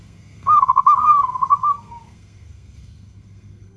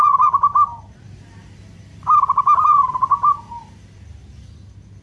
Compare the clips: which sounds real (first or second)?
second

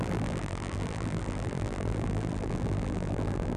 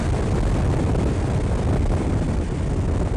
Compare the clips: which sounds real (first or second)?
second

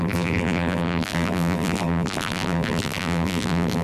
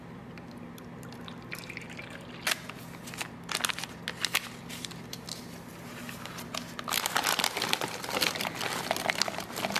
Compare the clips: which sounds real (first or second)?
second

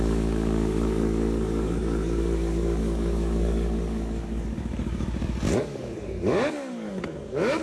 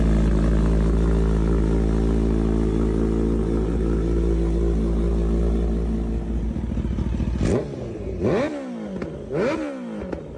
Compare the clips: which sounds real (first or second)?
second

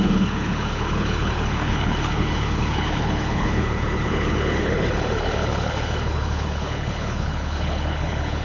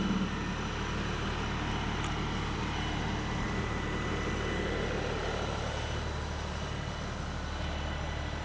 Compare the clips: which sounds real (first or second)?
second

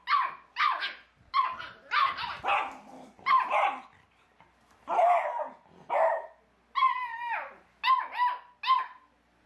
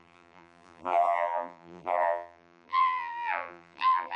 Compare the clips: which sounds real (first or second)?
first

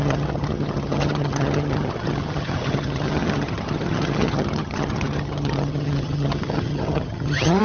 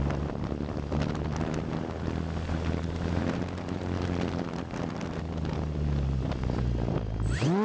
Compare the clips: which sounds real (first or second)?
second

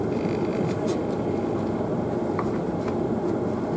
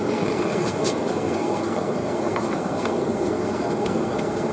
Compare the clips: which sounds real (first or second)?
first